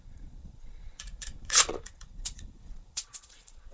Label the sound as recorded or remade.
remade